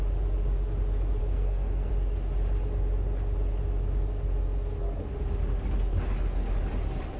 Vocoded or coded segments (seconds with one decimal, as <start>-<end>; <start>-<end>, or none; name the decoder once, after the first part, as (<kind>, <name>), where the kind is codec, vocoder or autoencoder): 1.2-1.9 (codec, SNAC)